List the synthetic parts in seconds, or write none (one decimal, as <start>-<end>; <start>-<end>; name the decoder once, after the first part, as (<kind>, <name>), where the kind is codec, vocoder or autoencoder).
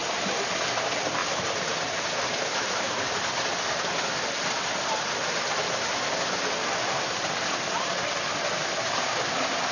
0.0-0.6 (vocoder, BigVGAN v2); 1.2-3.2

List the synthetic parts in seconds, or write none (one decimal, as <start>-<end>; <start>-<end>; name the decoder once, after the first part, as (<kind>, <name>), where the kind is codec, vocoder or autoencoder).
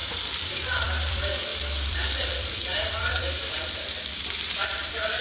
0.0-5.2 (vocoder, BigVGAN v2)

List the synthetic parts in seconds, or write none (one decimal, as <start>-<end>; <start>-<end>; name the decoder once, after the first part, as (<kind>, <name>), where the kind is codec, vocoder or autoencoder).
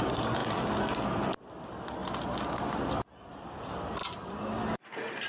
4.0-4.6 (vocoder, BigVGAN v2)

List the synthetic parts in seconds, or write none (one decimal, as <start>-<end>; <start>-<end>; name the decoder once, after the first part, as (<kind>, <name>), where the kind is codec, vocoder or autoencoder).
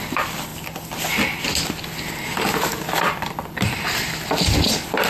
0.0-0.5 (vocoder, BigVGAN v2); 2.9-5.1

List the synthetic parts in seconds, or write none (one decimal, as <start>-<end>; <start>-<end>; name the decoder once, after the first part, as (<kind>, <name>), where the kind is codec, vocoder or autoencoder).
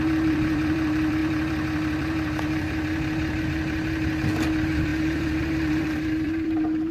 0.0-6.9 (vocoder, BigVGAN v2)